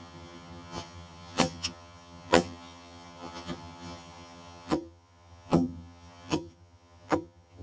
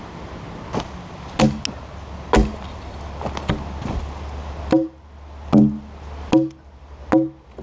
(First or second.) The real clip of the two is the second